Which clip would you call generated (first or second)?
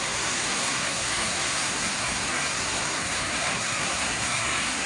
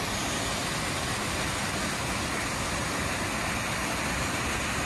first